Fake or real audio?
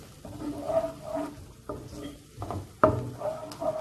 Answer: real